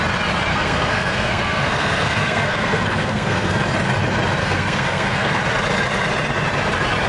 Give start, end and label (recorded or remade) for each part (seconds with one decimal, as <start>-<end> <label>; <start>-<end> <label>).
0.0-0.5 recorded; 0.5-3.5 remade; 3.5-4.4 recorded; 4.4-5.4 remade; 5.4-7.1 recorded